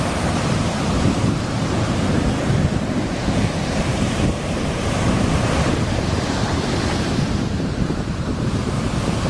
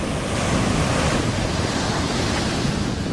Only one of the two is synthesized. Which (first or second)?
first